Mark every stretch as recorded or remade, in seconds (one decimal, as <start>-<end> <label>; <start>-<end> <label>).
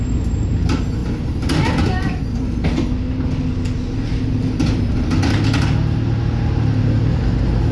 0.0-7.7 recorded